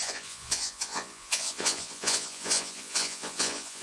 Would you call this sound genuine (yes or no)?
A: no